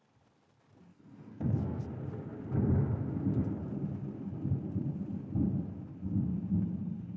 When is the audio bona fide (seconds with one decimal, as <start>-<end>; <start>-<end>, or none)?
0.0-0.9; 1.8-7.2